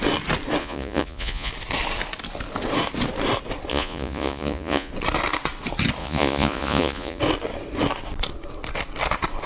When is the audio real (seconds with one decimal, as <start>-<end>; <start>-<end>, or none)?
0.0-0.6; 1.5-3.7; 4.9-6.0; 7.2-9.5